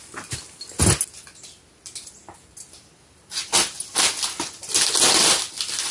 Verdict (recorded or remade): recorded